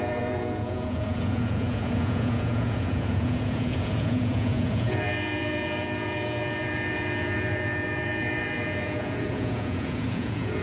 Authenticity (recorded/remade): remade